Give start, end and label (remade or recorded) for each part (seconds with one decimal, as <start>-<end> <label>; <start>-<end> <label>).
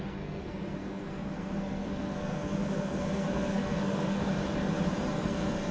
0.0-4.3 remade; 4.3-5.1 recorded; 5.1-5.7 remade